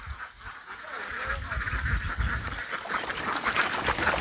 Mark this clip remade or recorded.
recorded